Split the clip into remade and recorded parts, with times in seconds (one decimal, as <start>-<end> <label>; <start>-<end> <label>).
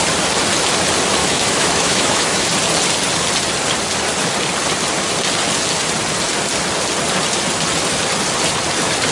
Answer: 0.0-1.2 recorded; 1.2-2.5 remade; 2.5-9.1 recorded